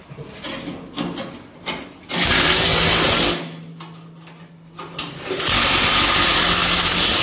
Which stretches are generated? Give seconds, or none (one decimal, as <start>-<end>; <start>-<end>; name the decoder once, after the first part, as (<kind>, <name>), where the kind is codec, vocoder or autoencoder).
none